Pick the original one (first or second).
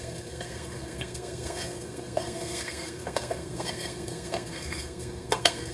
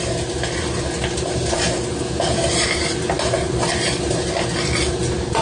second